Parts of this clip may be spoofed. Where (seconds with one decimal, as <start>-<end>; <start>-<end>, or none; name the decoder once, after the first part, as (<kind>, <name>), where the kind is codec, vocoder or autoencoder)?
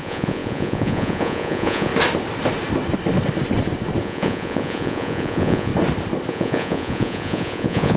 0.0-1.9 (vocoder, Vocos); 4.0-5.7; 6.3-8.0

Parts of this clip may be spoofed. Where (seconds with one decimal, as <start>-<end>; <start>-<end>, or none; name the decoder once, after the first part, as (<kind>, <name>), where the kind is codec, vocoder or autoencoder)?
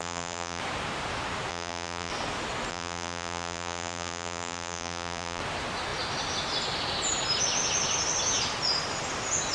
0.0-0.6 (vocoder, BigVGAN v2); 1.5-2.1; 2.7-5.4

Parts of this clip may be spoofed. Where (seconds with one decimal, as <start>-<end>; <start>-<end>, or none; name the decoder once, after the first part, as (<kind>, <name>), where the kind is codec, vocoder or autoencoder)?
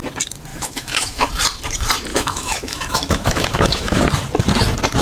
0.5-1.3 (autoencoder, DAC-VAE); 2.1-4.0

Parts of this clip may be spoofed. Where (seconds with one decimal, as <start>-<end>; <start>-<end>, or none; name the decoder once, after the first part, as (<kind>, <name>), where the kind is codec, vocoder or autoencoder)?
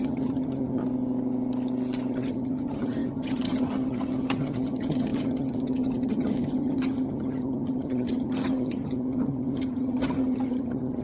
0.0-0.8 (vocoder, HiFi-GAN); 2.1-11.0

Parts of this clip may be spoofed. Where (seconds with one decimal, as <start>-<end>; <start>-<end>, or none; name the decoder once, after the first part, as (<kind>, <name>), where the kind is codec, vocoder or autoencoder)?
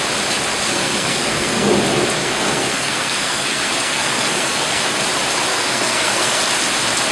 0.6-1.7 (codec, SNAC); 2.2-5.0; 5.5-6.4